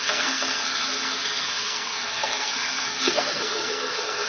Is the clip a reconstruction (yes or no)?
yes